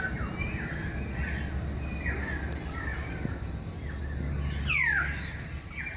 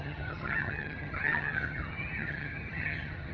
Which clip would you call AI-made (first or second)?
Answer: second